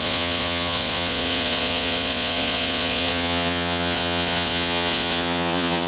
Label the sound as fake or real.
fake